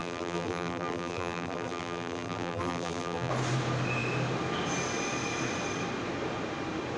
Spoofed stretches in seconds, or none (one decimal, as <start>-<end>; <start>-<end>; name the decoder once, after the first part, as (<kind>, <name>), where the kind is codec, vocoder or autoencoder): 0.0-3.3 (vocoder, BigVGAN v2)